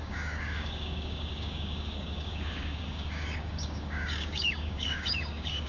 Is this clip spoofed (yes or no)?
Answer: yes